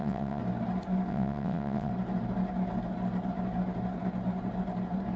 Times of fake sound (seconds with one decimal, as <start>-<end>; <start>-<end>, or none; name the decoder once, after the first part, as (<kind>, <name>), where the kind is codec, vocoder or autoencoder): 0.0-0.4 (vocoder, WaveNeXt); 1.1-1.9